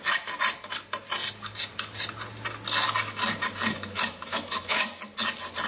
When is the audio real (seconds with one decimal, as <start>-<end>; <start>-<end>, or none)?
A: 0.0-3.7; 4.8-5.7